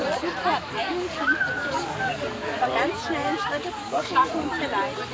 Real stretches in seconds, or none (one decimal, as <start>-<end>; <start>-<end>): 0.0-0.8; 2.6-3.5; 4.5-5.1